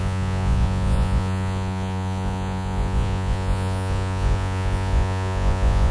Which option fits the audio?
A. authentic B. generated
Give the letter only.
B